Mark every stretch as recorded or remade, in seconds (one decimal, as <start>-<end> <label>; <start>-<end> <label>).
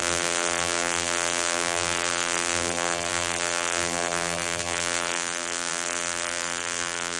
0.0-7.2 remade